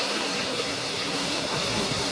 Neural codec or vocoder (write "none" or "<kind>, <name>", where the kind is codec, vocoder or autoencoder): codec, SNAC